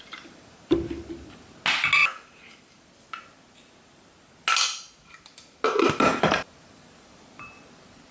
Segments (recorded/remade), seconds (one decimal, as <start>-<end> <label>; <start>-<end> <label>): 0.0-8.1 recorded

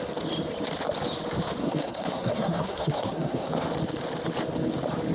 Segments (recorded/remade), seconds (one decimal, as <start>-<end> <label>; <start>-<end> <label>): 0.0-1.6 recorded; 1.6-3.5 remade; 3.5-5.1 recorded

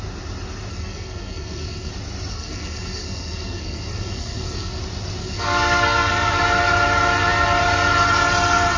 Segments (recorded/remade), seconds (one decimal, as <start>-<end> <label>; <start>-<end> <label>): 0.0-0.7 recorded; 0.7-1.9 remade; 1.9-2.3 recorded; 2.3-4.8 remade; 4.8-5.2 recorded; 5.2-6.4 remade; 6.4-8.8 recorded

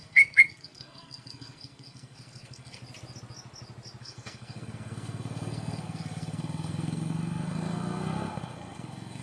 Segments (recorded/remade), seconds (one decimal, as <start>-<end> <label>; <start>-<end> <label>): 0.0-2.8 remade; 2.8-4.0 recorded; 4.0-9.2 remade

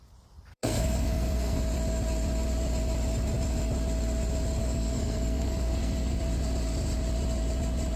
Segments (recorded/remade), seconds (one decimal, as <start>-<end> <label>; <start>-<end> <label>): 0.0-0.5 recorded; 0.5-1.6 remade; 1.6-4.6 recorded; 4.6-6.2 remade; 6.2-8.0 recorded

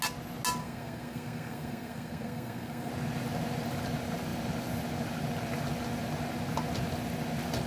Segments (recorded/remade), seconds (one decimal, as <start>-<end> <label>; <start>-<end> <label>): 0.0-0.6 recorded; 0.6-2.9 remade; 2.9-7.7 recorded